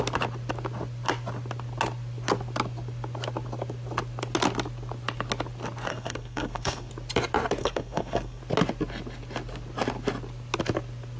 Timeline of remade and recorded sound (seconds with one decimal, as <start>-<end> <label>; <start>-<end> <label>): 0.0-5.9 recorded; 5.9-6.9 remade; 6.9-7.6 recorded; 7.6-8.4 remade; 8.4-11.2 recorded